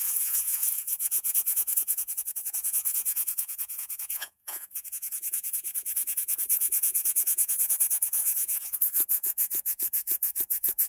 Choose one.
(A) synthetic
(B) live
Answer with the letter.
A